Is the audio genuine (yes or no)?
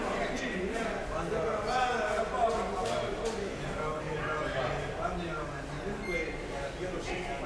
yes